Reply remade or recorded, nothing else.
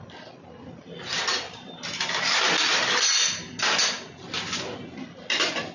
recorded